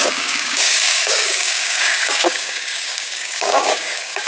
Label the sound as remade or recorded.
remade